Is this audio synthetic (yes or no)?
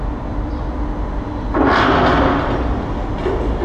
no